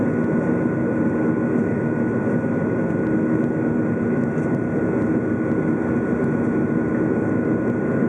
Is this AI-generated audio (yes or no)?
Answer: no